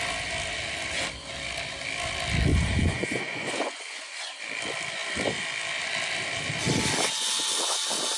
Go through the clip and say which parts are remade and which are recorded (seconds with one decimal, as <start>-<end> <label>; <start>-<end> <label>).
0.0-2.5 recorded; 2.5-4.4 remade; 4.4-8.2 recorded